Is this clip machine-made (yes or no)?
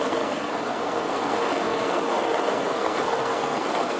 yes